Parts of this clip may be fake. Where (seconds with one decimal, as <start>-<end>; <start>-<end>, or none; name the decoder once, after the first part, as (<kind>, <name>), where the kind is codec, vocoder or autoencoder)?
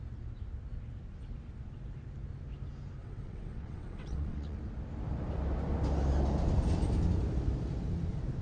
3.0-4.6 (vocoder, WaveNeXt)